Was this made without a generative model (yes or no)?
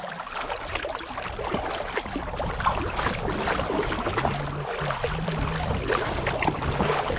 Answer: yes